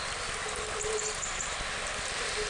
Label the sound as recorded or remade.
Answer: recorded